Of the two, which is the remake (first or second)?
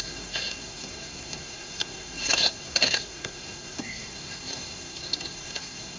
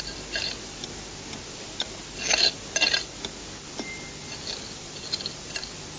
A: first